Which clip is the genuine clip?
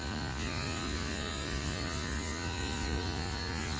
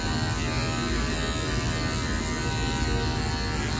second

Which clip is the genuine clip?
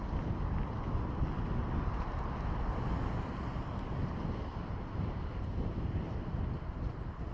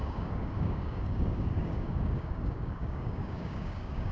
first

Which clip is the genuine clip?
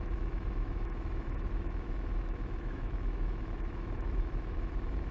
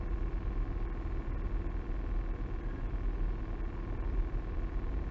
second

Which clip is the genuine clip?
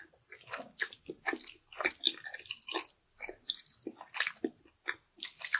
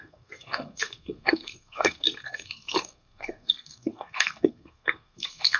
first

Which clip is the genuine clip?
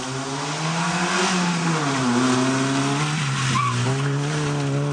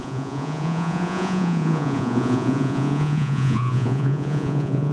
first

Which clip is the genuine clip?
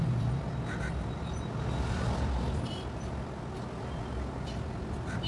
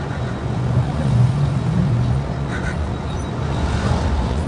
first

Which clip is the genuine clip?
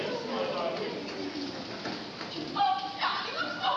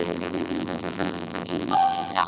first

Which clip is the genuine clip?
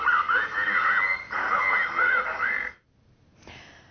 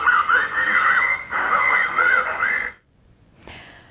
first